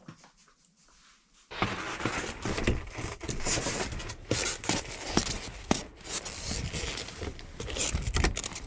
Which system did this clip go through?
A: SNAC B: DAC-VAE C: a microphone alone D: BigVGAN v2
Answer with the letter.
C